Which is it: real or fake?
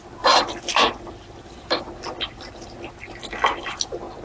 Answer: real